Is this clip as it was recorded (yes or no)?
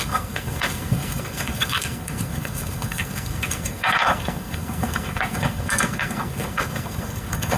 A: no